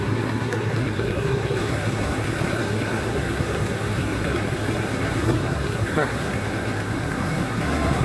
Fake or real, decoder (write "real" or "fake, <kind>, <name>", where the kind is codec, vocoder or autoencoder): fake, codec, SNAC